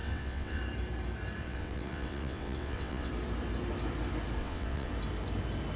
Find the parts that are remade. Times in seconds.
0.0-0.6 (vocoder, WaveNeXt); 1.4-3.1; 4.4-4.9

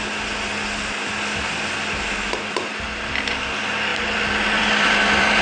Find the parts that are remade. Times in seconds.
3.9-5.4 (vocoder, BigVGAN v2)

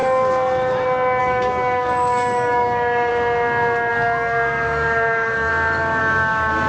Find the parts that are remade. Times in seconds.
1.2-3.1 (codec, DAC); 3.9-5.5; 6.0-6.7

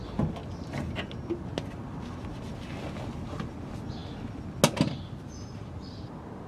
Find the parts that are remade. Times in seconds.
none